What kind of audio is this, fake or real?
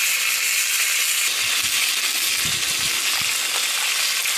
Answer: real